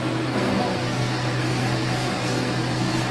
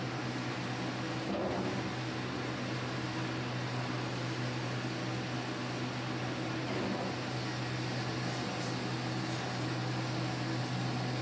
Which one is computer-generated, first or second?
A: first